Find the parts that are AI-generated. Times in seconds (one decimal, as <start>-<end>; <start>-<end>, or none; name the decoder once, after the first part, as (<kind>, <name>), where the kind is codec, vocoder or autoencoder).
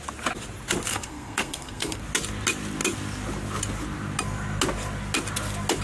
0.9-2.0 (codec, SNAC)